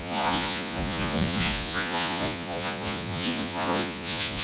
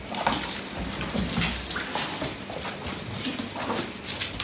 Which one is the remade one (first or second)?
first